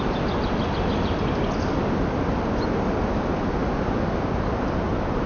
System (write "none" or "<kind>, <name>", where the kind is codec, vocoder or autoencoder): none